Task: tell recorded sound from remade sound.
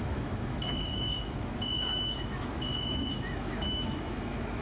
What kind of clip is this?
remade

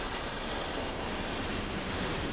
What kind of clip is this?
recorded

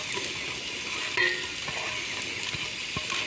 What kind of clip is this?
recorded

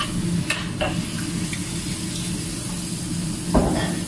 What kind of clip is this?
recorded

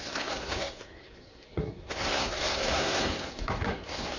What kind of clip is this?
remade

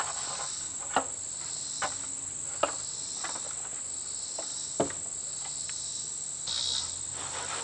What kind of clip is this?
recorded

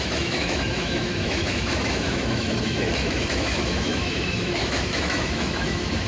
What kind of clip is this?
remade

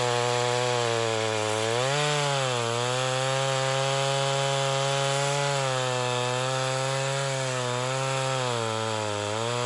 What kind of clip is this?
recorded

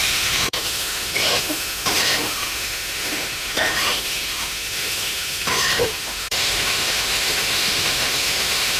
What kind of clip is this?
remade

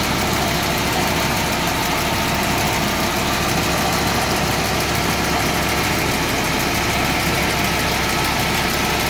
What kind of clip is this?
recorded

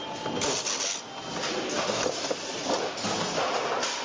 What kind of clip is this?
recorded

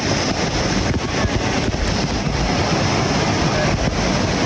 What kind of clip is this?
recorded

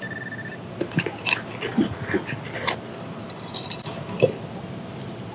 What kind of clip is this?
recorded